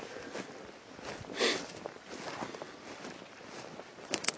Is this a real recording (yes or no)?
yes